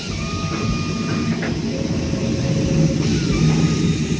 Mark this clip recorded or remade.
recorded